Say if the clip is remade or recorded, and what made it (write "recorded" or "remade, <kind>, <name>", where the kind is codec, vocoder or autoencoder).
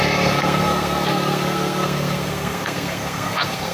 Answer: remade, codec, SNAC